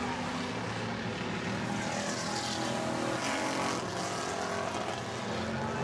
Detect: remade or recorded recorded